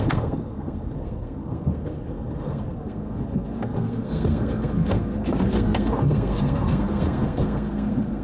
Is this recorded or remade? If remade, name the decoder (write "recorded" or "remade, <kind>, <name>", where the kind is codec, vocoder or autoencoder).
remade, codec, SNAC